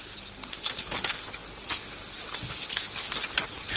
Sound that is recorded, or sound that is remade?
recorded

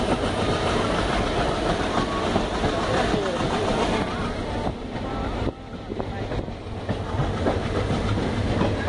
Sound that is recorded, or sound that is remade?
recorded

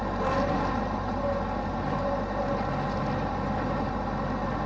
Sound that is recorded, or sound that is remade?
recorded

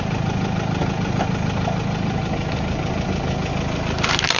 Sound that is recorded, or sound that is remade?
recorded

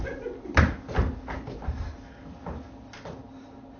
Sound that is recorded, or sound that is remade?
recorded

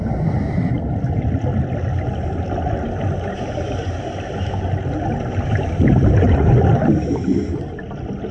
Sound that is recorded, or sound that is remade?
recorded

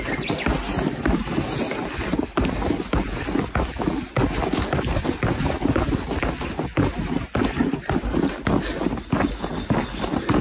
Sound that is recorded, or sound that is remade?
recorded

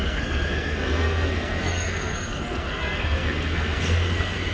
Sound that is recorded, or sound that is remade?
remade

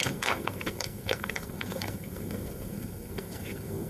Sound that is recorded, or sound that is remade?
remade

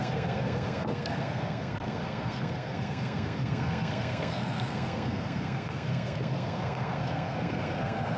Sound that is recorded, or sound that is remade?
remade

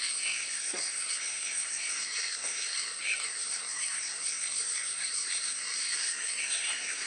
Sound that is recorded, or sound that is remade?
remade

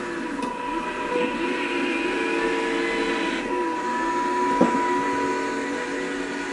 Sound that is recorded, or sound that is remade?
recorded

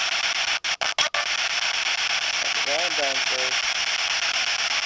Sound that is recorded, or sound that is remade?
recorded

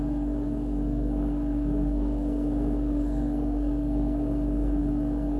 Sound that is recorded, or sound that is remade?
remade